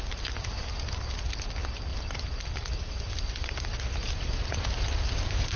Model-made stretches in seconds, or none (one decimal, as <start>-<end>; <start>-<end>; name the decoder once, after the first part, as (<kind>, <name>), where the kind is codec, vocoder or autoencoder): none